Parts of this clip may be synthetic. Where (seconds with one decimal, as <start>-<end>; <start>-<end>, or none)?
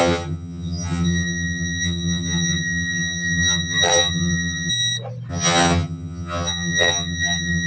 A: 0.0-4.7; 5.3-7.7